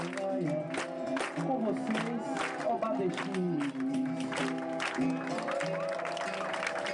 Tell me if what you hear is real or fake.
real